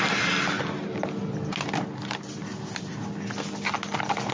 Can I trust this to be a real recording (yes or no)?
yes